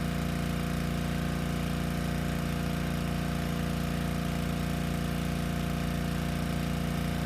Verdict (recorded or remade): recorded